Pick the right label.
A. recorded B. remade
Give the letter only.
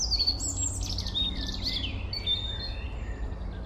A